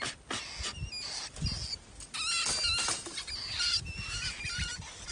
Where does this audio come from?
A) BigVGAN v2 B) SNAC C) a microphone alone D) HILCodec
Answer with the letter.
C